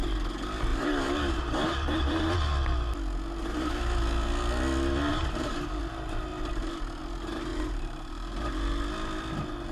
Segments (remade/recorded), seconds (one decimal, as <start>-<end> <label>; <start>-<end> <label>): 0.0-0.7 recorded; 0.7-2.3 remade; 2.3-5.1 recorded; 5.1-5.8 remade; 5.8-7.5 recorded; 7.5-8.1 remade; 8.1-9.7 recorded